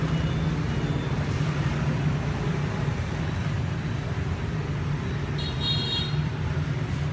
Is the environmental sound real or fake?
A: real